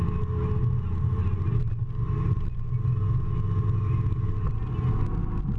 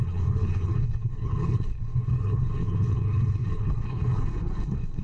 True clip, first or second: first